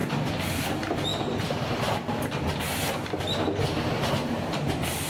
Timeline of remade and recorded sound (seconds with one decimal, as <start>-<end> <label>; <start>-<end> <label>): 0.0-0.6 remade; 0.6-1.1 recorded; 1.1-2.6 remade; 2.6-5.1 recorded